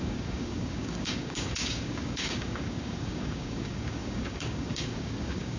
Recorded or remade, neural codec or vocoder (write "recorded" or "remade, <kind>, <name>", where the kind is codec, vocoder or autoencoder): remade, codec, DAC